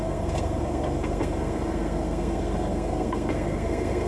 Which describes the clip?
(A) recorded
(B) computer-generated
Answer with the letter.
B